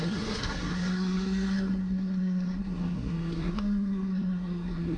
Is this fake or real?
fake